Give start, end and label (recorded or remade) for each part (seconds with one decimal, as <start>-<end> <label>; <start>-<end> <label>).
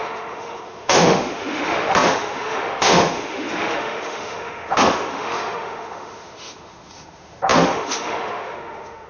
0.0-9.1 remade